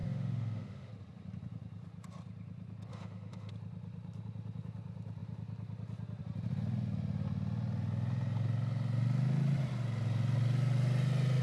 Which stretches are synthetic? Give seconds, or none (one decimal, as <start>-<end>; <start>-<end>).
0.0-0.9; 2.9-3.5